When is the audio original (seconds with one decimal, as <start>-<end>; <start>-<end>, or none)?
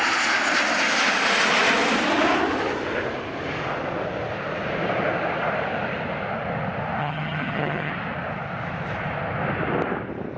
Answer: 0.0-7.0; 7.9-10.4